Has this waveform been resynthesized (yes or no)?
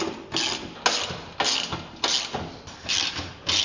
no